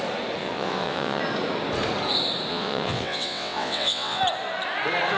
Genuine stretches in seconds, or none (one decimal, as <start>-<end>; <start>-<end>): 0.0-0.4; 1.2-2.5; 4.2-5.2